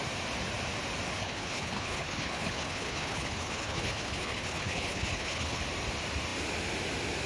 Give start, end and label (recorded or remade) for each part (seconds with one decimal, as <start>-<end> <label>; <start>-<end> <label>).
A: 0.0-1.2 recorded; 1.2-5.6 remade; 5.6-7.3 recorded